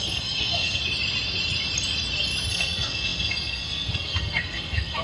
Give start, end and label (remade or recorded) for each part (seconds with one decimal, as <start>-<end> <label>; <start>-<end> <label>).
0.0-0.8 remade; 0.8-2.5 recorded; 2.5-5.0 remade